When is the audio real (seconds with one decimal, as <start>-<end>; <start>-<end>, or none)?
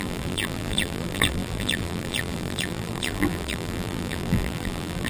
none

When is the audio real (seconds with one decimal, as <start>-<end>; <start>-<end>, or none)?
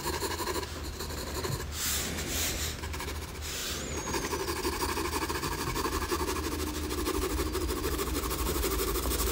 3.6-5.3; 6.1-7.2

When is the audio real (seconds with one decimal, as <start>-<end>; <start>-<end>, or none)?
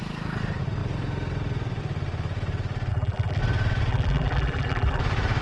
0.0-2.9; 3.4-3.9; 5.0-5.4